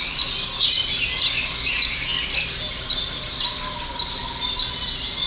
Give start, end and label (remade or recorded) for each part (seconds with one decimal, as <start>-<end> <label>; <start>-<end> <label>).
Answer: 0.0-5.3 recorded